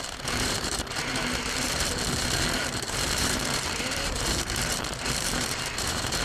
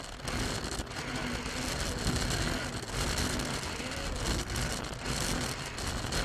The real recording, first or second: second